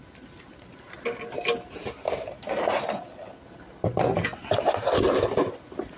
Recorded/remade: recorded